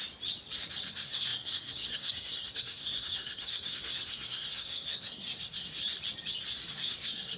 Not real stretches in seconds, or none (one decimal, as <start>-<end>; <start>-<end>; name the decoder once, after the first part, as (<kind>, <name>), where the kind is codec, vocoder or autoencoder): 0.9-5.7 (codec, SNAC); 6.7-7.4